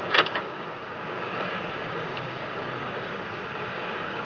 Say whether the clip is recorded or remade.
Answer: remade